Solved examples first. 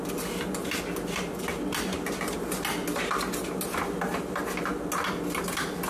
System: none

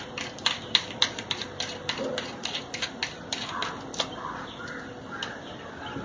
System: vocoder, BigVGAN v2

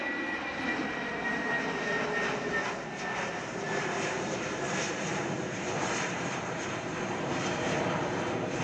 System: vocoder, BigVGAN v2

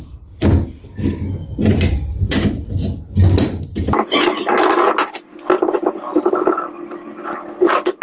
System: none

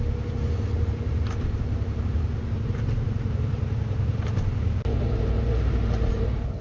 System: vocoder, BigVGAN v2